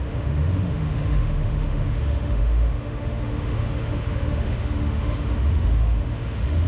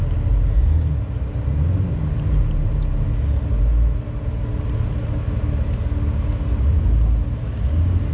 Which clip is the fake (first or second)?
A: first